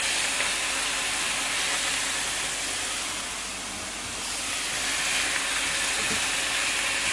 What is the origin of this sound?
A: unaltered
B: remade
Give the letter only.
A